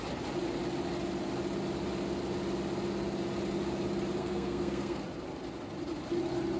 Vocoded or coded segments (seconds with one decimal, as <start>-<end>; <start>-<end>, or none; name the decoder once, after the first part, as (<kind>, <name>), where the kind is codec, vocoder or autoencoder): 4.2-5.0 (codec, SNAC)